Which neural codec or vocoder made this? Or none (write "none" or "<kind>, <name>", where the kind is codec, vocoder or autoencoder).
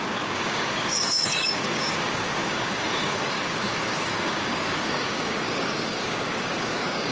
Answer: codec, DAC